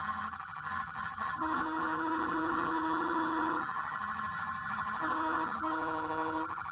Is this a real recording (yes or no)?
no